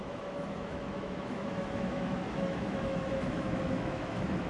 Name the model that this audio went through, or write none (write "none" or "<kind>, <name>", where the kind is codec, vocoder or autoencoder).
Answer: autoencoder, DAC-VAE